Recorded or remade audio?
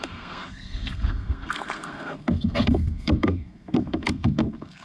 remade